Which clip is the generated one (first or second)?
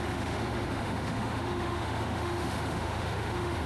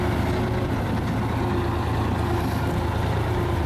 first